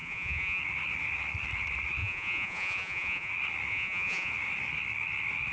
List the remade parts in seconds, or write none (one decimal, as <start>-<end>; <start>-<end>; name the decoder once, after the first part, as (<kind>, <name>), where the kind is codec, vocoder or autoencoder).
0.0-0.6 (vocoder, Vocos); 2.0-3.3; 3.7-4.3